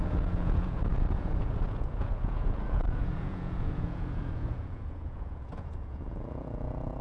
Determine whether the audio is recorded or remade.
remade